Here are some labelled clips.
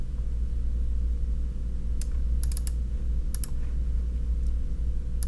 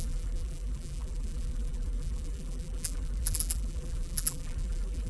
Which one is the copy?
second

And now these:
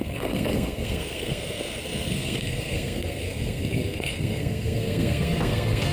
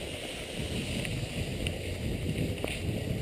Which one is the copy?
first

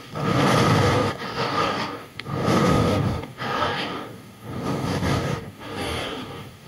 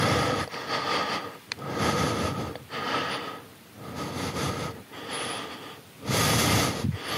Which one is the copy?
first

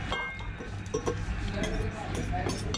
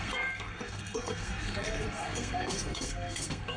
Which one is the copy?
second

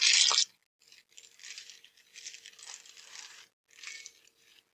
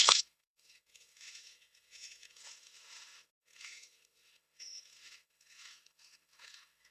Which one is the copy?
second